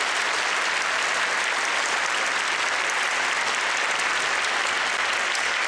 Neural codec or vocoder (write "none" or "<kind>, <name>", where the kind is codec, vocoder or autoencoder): none